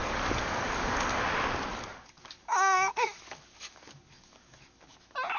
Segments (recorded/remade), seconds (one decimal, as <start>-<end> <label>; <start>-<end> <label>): 0.0-1.2 remade; 1.2-1.7 recorded; 1.7-4.9 remade; 4.9-5.4 recorded